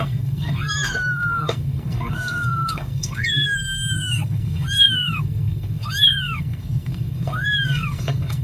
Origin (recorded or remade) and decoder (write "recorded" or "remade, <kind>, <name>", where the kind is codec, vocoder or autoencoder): remade, codec, SNAC